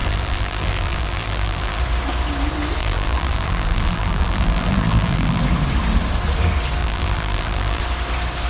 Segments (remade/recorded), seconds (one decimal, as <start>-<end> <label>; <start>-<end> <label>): 0.0-1.8 remade; 1.8-2.8 recorded; 2.8-5.4 remade; 5.4-6.8 recorded; 6.8-7.8 remade; 7.8-8.5 recorded